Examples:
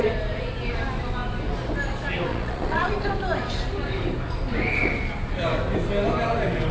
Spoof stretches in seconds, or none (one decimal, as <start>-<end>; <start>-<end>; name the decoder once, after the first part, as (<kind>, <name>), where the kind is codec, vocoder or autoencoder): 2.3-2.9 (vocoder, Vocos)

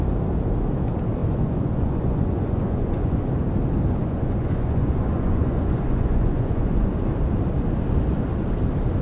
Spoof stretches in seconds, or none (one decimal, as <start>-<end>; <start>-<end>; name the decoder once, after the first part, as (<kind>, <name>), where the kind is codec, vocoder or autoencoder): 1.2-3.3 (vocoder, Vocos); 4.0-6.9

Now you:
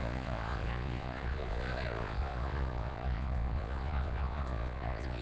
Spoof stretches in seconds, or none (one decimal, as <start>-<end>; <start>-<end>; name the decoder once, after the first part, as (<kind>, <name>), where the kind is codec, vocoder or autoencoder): 0.0-5.2 (vocoder, Vocos)

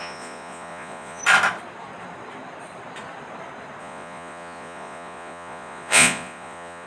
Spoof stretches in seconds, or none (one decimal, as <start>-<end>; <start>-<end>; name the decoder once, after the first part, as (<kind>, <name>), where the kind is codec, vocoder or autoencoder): 0.0-1.2 (vocoder, Vocos); 3.8-6.9

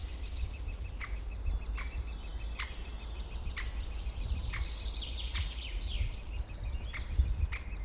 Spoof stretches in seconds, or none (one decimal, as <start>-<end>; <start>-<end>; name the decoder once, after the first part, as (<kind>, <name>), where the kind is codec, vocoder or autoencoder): 5.1-5.9 (vocoder, Vocos)

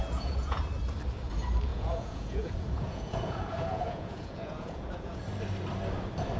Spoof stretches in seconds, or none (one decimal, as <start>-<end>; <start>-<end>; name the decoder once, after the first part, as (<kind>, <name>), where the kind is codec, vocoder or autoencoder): 0.0-0.6 (vocoder, Vocos); 1.7-5.2